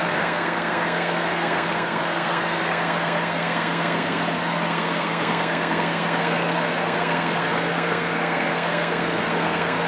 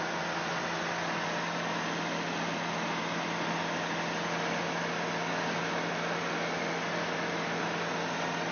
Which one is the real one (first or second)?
second